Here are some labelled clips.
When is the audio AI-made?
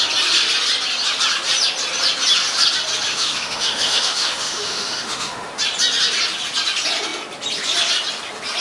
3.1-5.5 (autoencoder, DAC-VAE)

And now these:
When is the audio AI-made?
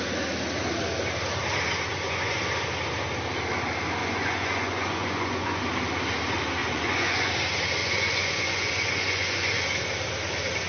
1.9-2.4 (vocoder, Vocos); 4.0-5.6; 6.6-7.3; 7.8-9.6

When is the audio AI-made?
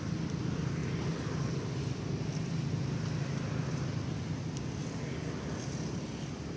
none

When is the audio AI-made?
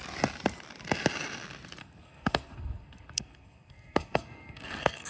1.8-5.1 (codec, SNAC)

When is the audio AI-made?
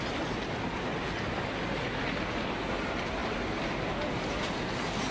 0.9-1.5 (vocoder, BigVGAN v2)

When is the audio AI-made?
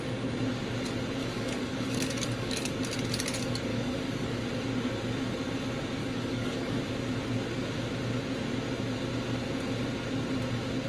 1.2-2.7 (codec, DAC); 3.7-4.4; 6.0-6.8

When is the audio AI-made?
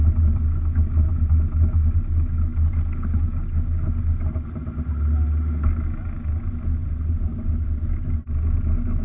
6.8-7.8 (vocoder, BigVGAN v2)